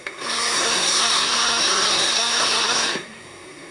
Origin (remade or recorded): remade